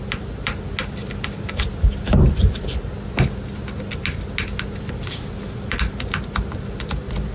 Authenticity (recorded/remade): recorded